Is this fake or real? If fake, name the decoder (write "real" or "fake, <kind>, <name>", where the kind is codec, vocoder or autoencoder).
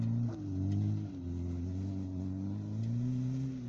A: real